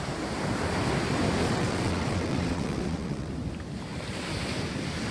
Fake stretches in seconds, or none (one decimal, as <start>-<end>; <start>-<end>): 1.4-3.3